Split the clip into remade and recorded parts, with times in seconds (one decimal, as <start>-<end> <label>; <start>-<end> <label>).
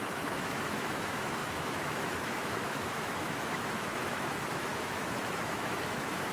0.0-6.3 remade